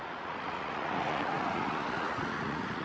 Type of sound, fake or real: fake